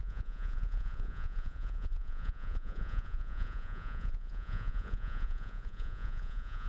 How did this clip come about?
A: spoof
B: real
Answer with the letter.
A